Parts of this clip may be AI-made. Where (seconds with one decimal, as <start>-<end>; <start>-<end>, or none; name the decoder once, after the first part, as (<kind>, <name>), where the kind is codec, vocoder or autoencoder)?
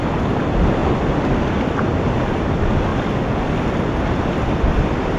0.0-0.8 (vocoder, BigVGAN v2); 2.0-2.9; 3.6-5.2